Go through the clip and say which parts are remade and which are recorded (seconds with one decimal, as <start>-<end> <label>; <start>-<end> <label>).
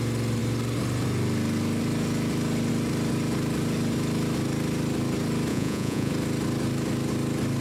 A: 0.0-5.5 recorded; 5.5-6.1 remade; 6.1-7.6 recorded